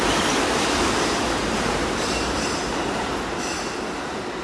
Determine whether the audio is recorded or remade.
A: recorded